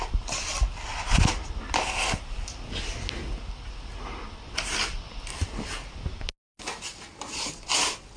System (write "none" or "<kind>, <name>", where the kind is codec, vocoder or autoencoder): none